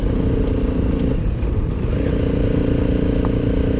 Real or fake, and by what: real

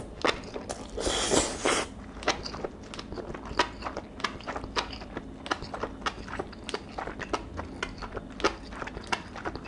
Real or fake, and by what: real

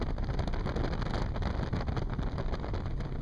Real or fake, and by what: real